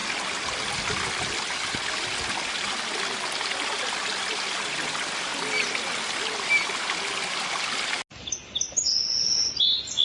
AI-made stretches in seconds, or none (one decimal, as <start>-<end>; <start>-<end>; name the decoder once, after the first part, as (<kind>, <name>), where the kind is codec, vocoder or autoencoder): none